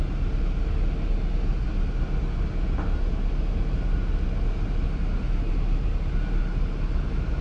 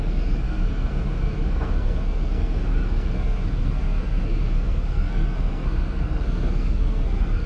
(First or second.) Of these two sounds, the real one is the first